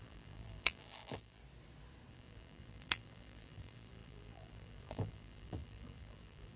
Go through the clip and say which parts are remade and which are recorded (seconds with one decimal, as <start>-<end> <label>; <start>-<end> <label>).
0.0-1.4 remade; 1.4-2.1 recorded; 2.1-6.6 remade